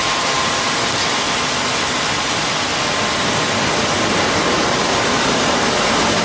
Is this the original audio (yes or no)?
yes